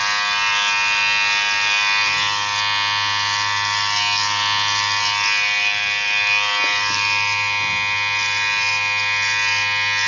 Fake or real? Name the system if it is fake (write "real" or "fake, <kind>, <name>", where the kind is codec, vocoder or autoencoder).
real